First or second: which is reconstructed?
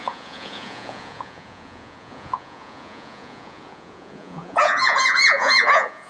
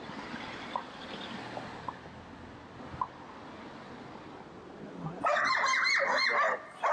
first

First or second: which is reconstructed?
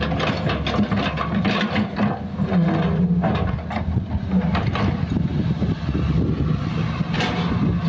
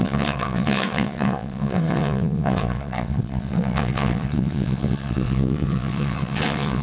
second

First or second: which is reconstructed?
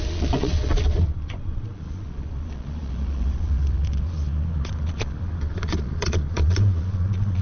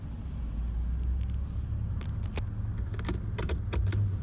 first